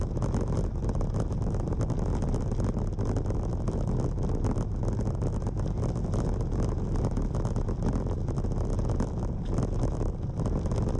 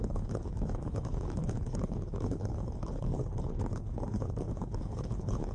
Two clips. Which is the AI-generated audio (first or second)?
second